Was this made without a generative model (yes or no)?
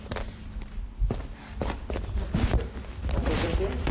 no